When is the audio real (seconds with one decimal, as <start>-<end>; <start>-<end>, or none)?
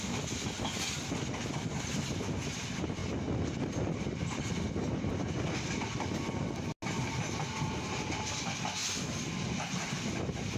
0.0-10.6